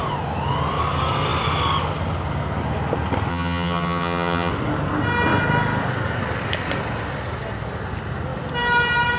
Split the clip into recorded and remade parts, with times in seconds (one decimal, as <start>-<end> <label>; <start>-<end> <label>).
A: 0.0-3.3 recorded; 3.3-4.5 remade; 4.5-9.2 recorded